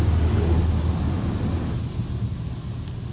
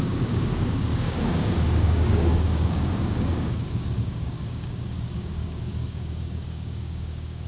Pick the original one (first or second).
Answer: first